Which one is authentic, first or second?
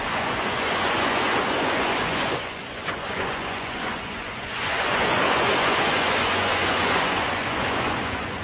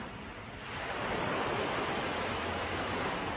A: second